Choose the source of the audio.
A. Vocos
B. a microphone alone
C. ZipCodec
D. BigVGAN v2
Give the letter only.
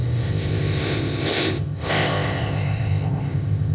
C